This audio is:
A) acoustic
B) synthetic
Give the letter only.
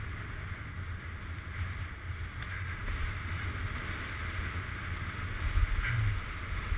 A